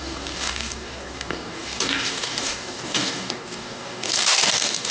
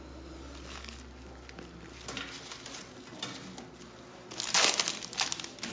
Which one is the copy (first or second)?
first